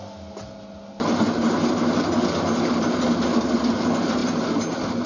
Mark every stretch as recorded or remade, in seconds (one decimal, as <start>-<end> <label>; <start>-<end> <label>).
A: 0.0-5.1 recorded

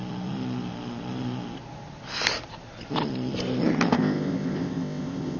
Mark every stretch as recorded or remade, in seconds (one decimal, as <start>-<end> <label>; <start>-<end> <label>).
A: 0.0-3.9 recorded; 3.9-5.4 remade

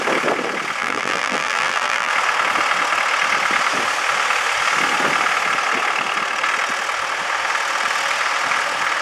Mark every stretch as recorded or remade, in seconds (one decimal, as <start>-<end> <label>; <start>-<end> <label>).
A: 0.0-0.8 recorded; 0.8-2.1 remade; 2.1-9.0 recorded

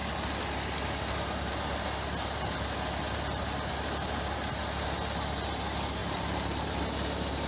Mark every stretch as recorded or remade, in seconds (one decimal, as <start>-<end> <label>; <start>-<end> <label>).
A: 0.0-6.0 recorded; 6.0-6.8 remade; 6.8-7.5 recorded